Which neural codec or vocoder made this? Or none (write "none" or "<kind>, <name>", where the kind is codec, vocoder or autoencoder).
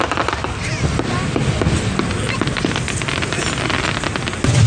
none